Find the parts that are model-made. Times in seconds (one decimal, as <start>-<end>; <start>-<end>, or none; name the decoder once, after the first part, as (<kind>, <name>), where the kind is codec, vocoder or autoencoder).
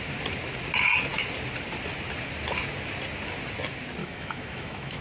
4.0-5.0 (autoencoder, DAC-VAE)